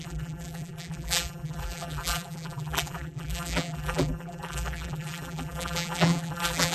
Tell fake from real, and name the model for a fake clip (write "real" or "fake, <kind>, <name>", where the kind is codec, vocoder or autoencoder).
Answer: fake, vocoder, BigVGAN v2